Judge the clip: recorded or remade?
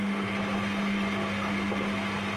recorded